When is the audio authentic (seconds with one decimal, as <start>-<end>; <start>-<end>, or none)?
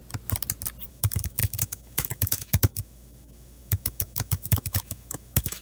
0.0-0.9